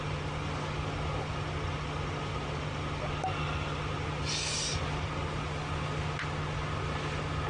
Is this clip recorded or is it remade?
recorded